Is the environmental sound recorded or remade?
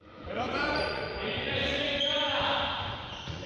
remade